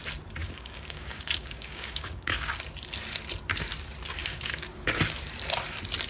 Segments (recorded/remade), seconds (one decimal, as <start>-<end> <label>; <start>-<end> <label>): 0.0-0.4 recorded; 0.4-2.5 remade; 2.5-4.2 recorded; 4.2-5.0 remade; 5.0-6.1 recorded